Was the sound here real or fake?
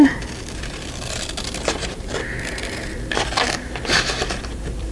fake